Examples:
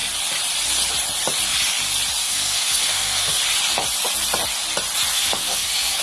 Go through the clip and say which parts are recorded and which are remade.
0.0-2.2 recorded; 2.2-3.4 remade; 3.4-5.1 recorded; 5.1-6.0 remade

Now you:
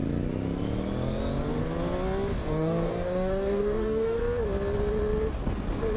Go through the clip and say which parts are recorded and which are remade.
0.0-2.3 recorded; 2.3-4.2 remade; 4.2-6.0 recorded

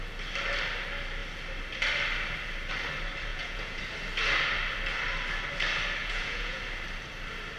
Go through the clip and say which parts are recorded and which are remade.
0.0-3.3 recorded; 3.3-3.8 remade; 3.8-6.0 recorded; 6.0-6.6 remade; 6.6-7.6 recorded

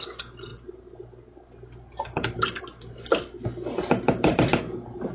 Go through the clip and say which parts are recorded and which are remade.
0.0-5.1 recorded

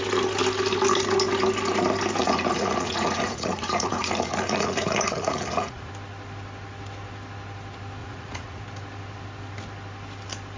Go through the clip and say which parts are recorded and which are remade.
0.0-2.2 recorded; 2.2-5.9 remade; 5.9-8.0 recorded; 8.0-8.6 remade; 8.6-10.6 recorded

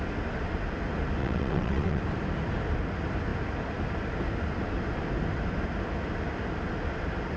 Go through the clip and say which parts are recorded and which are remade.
0.0-1.2 recorded; 1.2-2.0 remade; 2.0-7.4 recorded

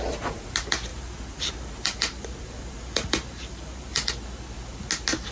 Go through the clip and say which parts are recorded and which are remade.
0.0-0.9 recorded; 0.9-4.1 remade; 4.1-5.3 recorded